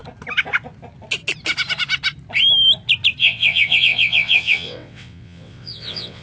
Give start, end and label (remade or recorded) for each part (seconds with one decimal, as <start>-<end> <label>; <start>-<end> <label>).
0.0-3.2 recorded; 3.2-6.2 remade